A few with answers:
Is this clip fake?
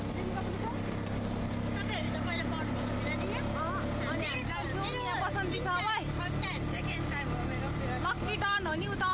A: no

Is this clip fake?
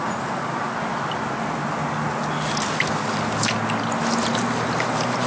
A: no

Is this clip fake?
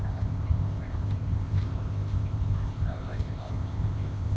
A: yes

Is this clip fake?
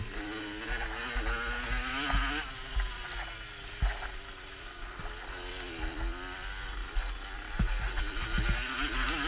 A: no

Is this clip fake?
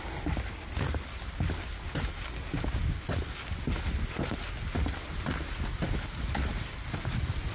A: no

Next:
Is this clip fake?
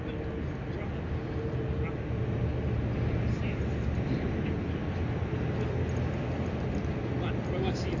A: no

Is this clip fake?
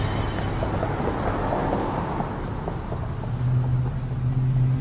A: no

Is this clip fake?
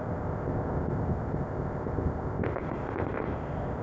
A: yes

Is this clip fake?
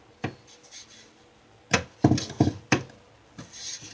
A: no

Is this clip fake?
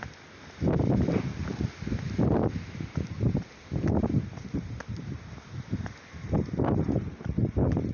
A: no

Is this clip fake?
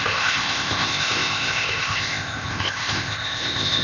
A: yes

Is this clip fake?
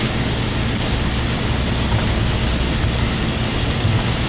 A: no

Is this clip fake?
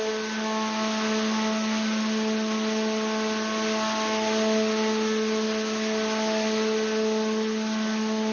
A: no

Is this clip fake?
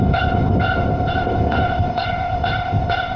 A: yes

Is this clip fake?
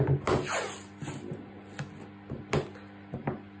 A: no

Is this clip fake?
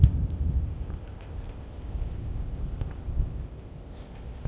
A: yes